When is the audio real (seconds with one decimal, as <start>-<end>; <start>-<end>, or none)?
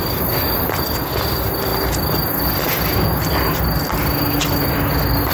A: 0.0-5.3